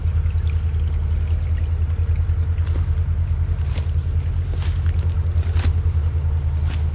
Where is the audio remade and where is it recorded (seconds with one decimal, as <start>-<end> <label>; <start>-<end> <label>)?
0.0-6.9 recorded